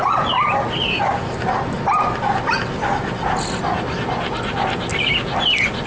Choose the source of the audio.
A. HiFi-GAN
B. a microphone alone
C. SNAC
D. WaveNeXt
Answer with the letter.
B